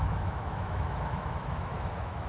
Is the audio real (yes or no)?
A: no